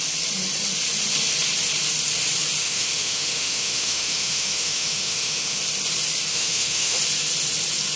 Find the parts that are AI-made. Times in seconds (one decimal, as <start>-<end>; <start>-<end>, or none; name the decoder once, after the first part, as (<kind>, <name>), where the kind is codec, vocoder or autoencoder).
2.6-5.6 (autoencoder, DAC-VAE); 6.3-7.0